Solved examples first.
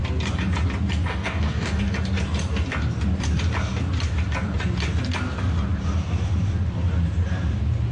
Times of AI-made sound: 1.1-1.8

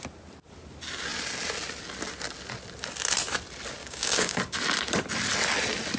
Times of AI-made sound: 3.8-4.4

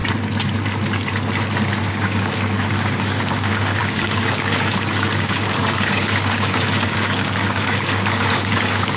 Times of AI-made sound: 1.9-9.0

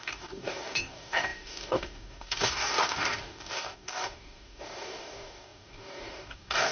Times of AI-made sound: 0.0-6.7